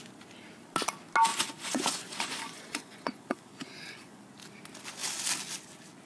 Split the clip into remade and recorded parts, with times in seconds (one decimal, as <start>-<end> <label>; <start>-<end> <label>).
0.0-1.3 recorded; 1.3-4.2 remade; 4.2-6.1 recorded